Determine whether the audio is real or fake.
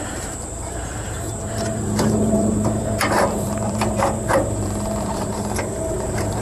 fake